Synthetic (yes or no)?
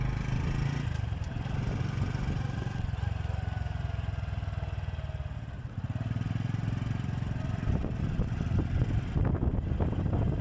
no